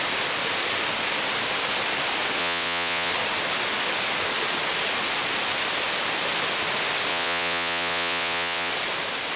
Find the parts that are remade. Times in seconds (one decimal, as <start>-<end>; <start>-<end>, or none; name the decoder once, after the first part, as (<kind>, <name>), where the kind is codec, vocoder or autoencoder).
2.4-3.1 (vocoder, WaveNeXt); 7.1-8.7